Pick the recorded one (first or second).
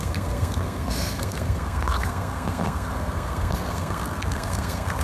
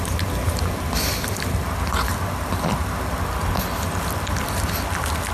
second